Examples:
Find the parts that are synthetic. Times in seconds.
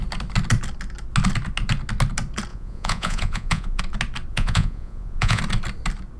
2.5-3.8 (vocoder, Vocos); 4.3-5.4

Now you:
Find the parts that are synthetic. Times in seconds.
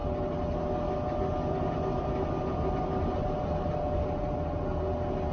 none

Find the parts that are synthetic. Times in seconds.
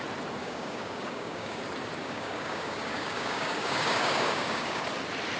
0.4-1.6 (codec, DAC); 2.0-4.8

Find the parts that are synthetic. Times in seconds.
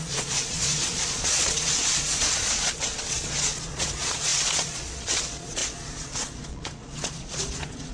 0.0-7.9 (vocoder, Vocos)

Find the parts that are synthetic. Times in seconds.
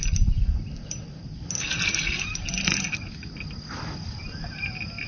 none